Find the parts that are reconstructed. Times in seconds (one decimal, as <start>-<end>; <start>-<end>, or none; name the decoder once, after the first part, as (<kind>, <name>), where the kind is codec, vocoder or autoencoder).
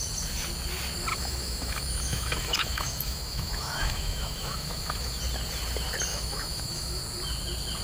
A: 1.1-5.2 (autoencoder, DAC-VAE); 6.1-7.0